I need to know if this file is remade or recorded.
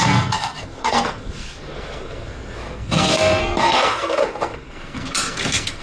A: remade